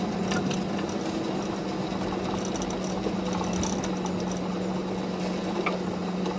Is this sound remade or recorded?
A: recorded